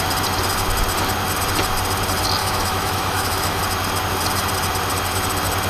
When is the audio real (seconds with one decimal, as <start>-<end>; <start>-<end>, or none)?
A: 0.0-2.4; 3.6-5.7